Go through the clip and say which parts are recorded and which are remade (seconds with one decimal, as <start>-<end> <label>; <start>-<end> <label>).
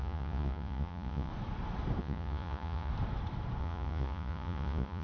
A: 0.0-1.3 remade; 1.3-2.0 recorded; 2.0-2.9 remade; 2.9-3.6 recorded; 3.6-5.0 remade